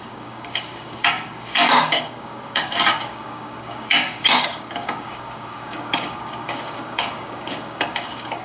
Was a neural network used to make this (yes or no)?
yes